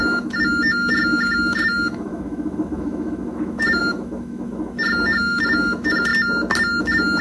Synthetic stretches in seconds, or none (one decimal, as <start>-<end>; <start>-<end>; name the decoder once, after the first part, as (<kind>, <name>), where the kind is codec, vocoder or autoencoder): 0.0-6.1 (autoencoder, DAC-VAE); 6.8-7.2

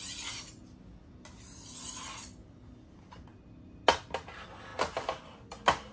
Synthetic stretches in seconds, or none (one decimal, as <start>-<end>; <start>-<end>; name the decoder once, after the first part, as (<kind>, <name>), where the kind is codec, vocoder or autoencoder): none

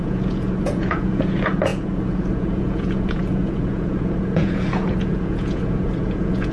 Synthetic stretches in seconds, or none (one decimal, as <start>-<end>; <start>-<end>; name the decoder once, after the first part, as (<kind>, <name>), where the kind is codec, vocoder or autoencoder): 0.0-6.5 (vocoder, Vocos)

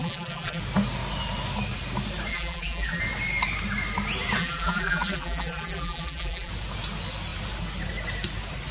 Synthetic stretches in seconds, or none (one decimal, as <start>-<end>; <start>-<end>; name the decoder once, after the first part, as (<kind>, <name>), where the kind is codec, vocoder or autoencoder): 0.0-0.6 (vocoder, BigVGAN v2); 2.3-3.0; 4.4-6.5

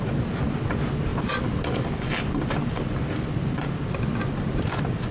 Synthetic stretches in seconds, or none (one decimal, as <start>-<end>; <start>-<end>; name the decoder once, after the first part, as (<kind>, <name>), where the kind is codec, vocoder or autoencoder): none

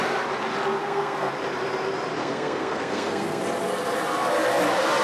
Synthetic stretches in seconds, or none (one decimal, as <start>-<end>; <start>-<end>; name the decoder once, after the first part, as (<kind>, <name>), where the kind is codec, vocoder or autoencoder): 0.8-1.3 (codec, SNAC); 2.2-3.4

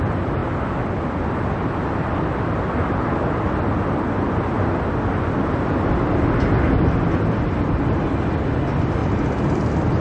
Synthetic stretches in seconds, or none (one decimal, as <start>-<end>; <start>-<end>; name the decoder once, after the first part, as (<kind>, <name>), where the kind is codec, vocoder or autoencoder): 9.0-10.0 (vocoder, BigVGAN v2)

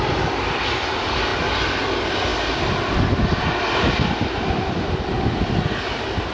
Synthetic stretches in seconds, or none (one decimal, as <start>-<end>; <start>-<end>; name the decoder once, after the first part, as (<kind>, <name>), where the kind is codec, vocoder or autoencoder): 0.0-1.3 (vocoder, BigVGAN v2); 1.9-2.3